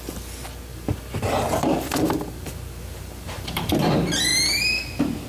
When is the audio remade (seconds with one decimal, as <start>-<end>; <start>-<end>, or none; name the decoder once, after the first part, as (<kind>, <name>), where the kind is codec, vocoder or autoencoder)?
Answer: 0.7-3.7 (vocoder, BigVGAN v2)

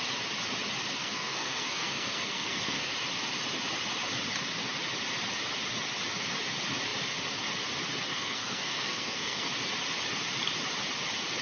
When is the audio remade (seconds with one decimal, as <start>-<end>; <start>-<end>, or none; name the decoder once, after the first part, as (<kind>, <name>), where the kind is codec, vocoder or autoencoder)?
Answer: 1.0-2.9 (codec, SNAC); 8.1-9.5